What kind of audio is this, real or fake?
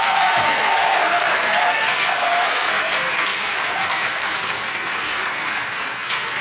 fake